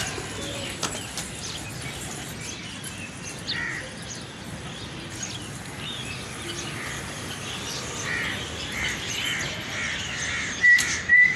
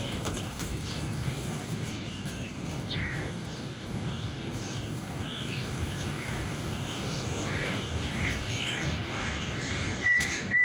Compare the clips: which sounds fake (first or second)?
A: second